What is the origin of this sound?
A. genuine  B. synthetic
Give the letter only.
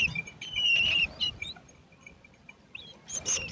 B